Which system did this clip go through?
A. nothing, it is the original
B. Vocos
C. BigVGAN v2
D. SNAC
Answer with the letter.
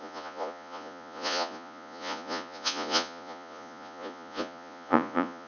B